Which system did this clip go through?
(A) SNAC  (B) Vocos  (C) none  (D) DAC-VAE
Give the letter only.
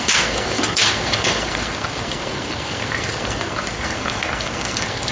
A